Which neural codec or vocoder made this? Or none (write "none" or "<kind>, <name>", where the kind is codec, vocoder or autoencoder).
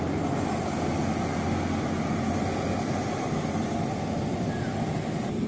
none